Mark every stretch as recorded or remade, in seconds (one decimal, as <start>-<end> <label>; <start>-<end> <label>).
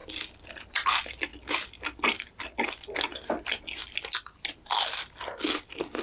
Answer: 0.0-6.0 recorded